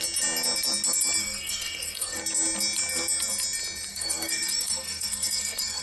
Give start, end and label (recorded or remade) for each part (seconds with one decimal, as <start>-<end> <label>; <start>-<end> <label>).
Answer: 0.0-1.2 recorded; 1.2-2.2 remade; 2.2-3.9 recorded; 3.9-5.8 remade